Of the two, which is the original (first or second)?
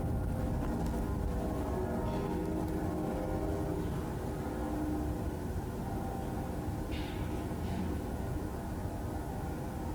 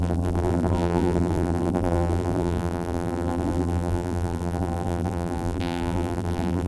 first